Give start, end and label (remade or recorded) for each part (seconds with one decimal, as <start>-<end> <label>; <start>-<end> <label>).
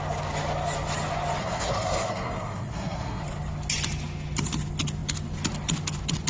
0.0-1.4 recorded; 1.4-3.2 remade; 3.2-6.3 recorded